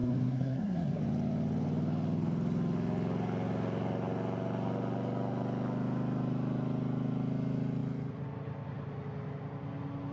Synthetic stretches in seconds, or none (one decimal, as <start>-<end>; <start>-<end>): 0.0-1.0